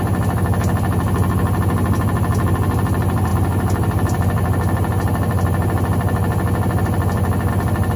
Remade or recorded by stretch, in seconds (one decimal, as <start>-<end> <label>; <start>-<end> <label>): 0.0-8.0 recorded